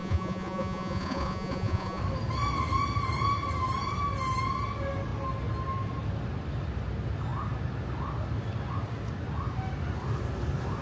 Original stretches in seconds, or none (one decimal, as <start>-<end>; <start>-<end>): 2.0-10.8